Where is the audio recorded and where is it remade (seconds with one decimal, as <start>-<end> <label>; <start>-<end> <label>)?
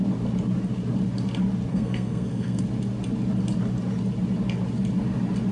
0.0-1.7 recorded; 1.7-2.6 remade; 2.6-5.5 recorded